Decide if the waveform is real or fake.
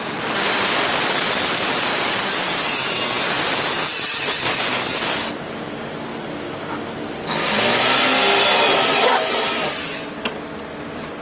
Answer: real